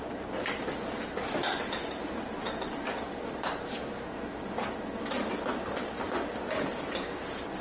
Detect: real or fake real